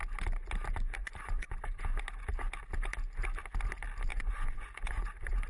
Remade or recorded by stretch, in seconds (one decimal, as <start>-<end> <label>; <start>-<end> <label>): 0.0-1.0 recorded; 1.0-1.8 remade; 1.8-4.1 recorded; 4.1-5.5 remade